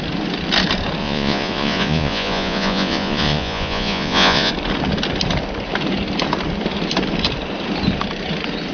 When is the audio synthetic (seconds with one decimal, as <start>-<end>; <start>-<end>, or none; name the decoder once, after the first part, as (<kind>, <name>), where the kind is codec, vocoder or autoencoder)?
1.0-4.5 (vocoder, Vocos)